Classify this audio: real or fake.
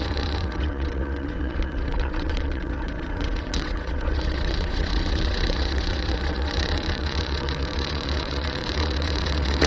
fake